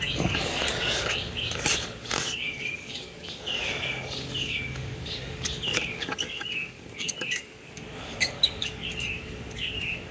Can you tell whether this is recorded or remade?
remade